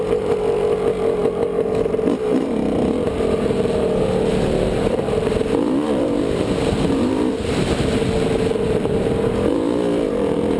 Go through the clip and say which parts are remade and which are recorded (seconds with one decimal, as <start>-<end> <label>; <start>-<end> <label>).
0.0-10.6 remade